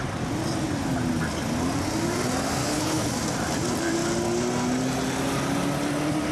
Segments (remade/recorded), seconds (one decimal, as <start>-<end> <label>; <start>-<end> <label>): 0.0-2.6 recorded; 2.6-3.1 remade; 3.1-6.3 recorded